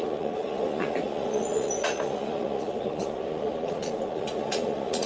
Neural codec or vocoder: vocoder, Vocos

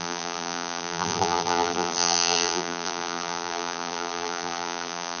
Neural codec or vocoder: vocoder, BigVGAN v2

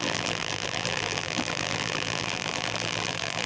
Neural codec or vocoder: vocoder, BigVGAN v2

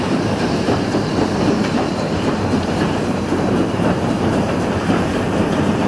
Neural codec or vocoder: vocoder, BigVGAN v2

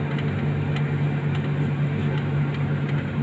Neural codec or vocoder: none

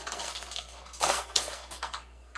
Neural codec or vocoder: codec, SNAC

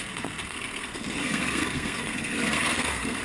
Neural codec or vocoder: codec, SNAC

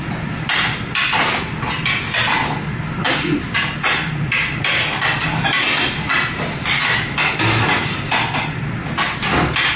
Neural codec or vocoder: none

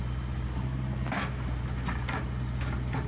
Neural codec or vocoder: none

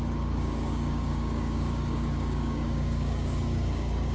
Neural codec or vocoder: codec, DAC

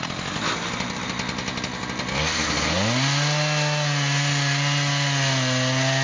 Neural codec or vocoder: none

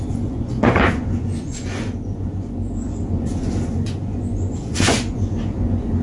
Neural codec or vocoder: vocoder, Vocos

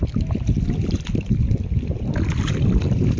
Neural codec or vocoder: none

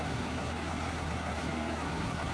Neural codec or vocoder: codec, SNAC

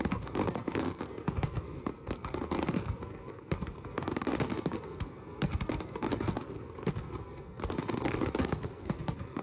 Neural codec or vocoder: codec, SNAC